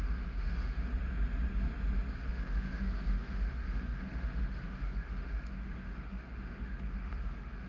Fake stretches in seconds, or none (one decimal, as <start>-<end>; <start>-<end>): 0.0-0.9; 2.3-7.7